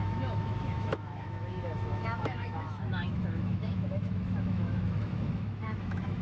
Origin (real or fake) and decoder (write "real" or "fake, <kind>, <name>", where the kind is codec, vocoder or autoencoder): fake, autoencoder, DAC-VAE